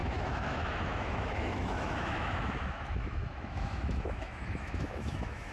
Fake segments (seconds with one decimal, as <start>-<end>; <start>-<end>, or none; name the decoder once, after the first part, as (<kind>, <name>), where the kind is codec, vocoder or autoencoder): 0.0-5.5 (autoencoder, DAC-VAE)

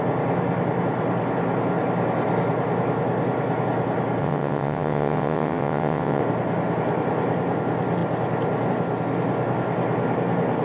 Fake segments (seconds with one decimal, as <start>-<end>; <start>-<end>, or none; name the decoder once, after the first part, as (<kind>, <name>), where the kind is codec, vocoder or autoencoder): 4.2-6.2 (vocoder, WaveNeXt)

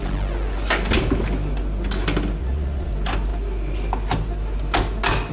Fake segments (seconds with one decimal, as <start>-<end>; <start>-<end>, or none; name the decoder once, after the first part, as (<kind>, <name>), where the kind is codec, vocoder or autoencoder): 2.4-2.9 (vocoder, Vocos)

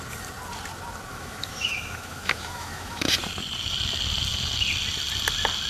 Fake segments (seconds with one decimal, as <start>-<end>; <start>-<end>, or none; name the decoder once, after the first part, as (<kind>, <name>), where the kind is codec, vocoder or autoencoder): 1.1-3.1 (autoencoder, DAC-VAE)